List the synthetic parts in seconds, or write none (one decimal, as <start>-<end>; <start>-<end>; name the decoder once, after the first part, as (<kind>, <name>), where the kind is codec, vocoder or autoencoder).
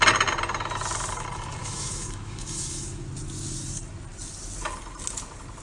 1.6-3.0 (autoencoder, DAC-VAE)